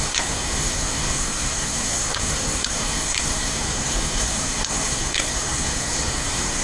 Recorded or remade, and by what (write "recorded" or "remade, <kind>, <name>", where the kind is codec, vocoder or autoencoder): remade, codec, SNAC